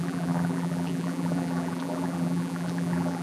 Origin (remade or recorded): remade